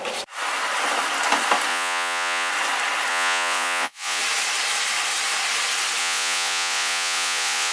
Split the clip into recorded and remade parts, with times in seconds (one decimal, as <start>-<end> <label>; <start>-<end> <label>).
0.0-1.7 recorded; 1.7-2.5 remade; 2.5-3.1 recorded; 3.1-4.2 remade; 4.2-6.0 recorded; 6.0-7.7 remade